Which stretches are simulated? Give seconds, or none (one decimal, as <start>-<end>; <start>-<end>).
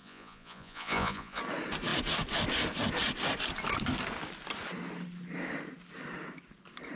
0.0-1.4